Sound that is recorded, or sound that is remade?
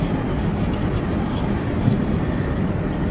recorded